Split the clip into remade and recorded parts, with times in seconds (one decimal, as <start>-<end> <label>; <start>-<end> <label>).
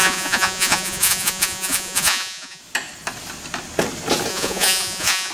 0.0-2.6 remade; 2.6-4.3 recorded; 4.3-5.3 remade